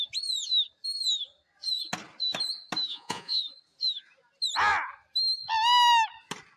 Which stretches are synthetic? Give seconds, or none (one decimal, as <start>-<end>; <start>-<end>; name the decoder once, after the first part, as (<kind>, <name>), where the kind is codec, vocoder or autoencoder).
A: 2.9-3.4 (vocoder, Vocos)